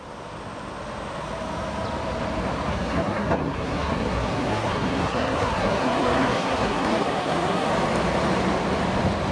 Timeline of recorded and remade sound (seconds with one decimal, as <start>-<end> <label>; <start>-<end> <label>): 0.0-2.7 recorded; 2.7-7.7 remade; 7.7-9.3 recorded